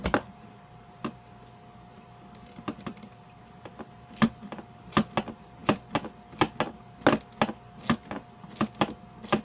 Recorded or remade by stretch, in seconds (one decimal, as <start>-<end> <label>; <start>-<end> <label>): 0.0-1.0 remade; 1.0-2.9 recorded; 2.9-3.7 remade; 3.7-9.4 recorded